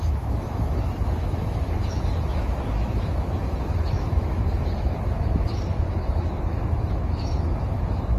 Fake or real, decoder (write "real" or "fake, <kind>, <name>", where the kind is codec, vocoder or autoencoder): fake, autoencoder, DAC-VAE